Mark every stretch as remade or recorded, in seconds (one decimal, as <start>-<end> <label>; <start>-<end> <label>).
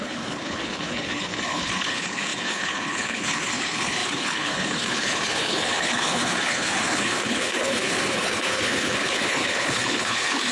0.0-10.5 remade